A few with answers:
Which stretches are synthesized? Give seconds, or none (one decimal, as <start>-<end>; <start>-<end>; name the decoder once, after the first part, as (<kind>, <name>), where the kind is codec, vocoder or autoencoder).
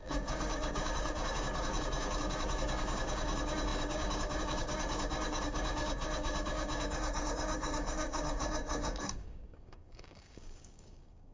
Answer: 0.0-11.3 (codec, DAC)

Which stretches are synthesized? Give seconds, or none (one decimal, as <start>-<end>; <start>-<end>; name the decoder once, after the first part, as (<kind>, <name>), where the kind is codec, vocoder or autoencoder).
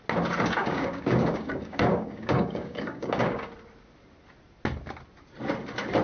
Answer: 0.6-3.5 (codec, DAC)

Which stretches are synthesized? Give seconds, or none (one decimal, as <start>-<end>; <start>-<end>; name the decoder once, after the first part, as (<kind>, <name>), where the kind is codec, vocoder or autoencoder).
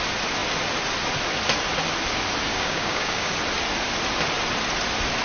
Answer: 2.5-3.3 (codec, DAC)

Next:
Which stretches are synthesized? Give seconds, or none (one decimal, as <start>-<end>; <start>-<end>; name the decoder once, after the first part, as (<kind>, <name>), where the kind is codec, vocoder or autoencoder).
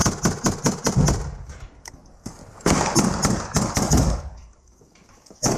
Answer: 1.4-2.4 (codec, DAC); 3.7-5.6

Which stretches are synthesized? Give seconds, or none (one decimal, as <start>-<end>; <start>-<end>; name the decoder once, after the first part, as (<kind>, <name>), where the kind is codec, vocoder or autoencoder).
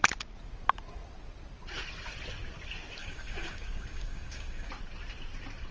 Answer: 3.0-4.7 (codec, DAC)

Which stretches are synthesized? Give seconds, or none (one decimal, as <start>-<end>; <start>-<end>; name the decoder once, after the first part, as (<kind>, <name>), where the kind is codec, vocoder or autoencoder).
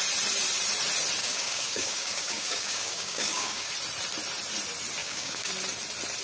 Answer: 1.2-3.7 (codec, DAC); 5.0-5.5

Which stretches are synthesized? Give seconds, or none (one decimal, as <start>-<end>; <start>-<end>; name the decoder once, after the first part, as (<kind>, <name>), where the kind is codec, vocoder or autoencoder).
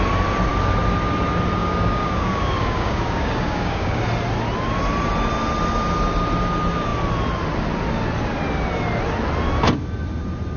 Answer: 1.6-4.0 (codec, DAC)